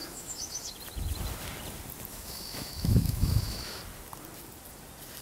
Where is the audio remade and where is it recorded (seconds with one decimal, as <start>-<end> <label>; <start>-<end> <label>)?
0.0-0.7 remade; 0.7-2.1 recorded; 2.1-3.8 remade; 3.8-5.2 recorded